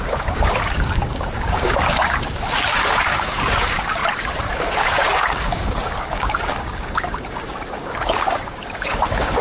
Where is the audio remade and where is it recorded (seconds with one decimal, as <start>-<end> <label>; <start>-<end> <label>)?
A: 0.0-4.0 remade; 4.0-4.5 recorded; 4.5-9.4 remade